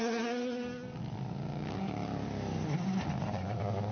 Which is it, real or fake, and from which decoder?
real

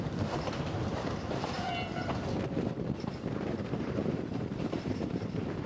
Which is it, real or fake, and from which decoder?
fake, vocoder, BigVGAN v2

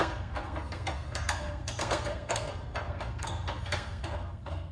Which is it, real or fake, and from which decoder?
fake, codec, SNAC